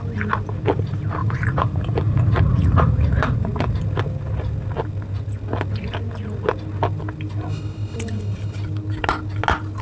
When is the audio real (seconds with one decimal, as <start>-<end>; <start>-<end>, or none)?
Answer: 0.0-1.2; 3.8-9.8